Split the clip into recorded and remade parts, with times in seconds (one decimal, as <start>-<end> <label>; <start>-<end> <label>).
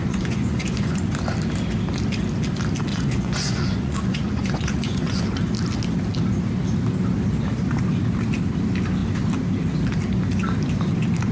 0.0-1.0 remade; 1.0-2.9 recorded; 2.9-5.2 remade; 5.2-11.3 recorded